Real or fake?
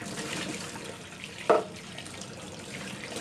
real